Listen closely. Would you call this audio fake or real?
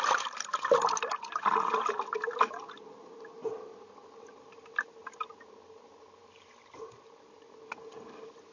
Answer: real